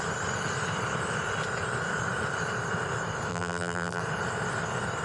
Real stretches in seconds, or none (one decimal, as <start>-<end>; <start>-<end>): 0.0-3.3; 4.0-5.0